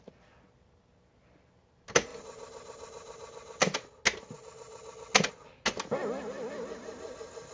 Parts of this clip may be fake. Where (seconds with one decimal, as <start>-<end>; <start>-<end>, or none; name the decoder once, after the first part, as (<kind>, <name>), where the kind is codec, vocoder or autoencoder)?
none